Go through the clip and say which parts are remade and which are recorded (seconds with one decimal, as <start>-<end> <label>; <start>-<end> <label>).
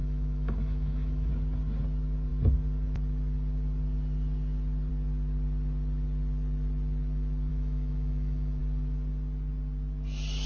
0.0-1.3 remade; 1.3-7.5 recorded; 7.5-8.6 remade; 8.6-10.5 recorded